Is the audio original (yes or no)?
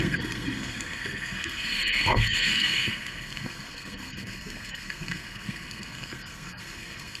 no